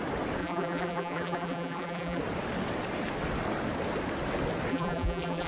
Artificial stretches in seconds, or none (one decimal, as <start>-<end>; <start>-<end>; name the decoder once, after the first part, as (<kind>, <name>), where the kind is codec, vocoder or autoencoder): 0.4-2.2 (vocoder, BigVGAN v2); 4.7-5.5